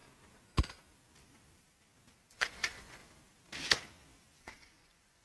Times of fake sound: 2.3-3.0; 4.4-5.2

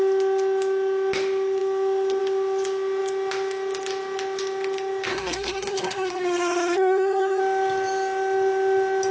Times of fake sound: 5.1-7.4

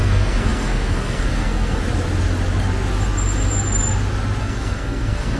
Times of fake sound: 0.0-1.8; 4.4-5.4

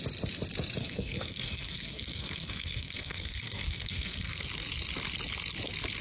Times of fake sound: 0.8-4.4

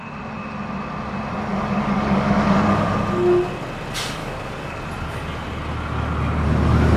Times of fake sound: 1.5-2.9; 4.2-4.8

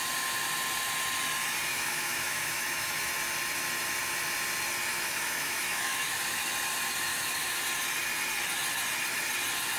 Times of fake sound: 1.7-3.1; 4.9-6.5; 7.1-7.6

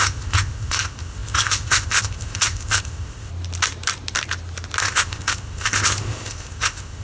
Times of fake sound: 0.0-3.3; 4.8-7.0

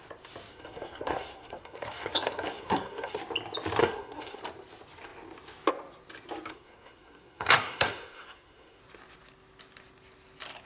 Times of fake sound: 0.5-3.2; 3.8-4.4; 6.5-8.8